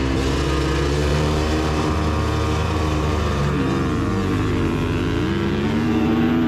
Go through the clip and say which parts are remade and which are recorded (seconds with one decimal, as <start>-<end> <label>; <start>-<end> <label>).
0.0-1.1 recorded; 1.1-1.9 remade; 1.9-2.6 recorded; 2.6-3.7 remade; 3.7-6.5 recorded